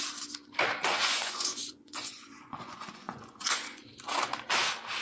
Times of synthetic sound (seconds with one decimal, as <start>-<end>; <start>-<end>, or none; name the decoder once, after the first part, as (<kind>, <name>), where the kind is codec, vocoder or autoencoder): 0.8-3.8 (vocoder, Vocos)